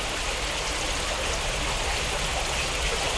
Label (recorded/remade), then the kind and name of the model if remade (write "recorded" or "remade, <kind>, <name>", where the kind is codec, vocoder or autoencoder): recorded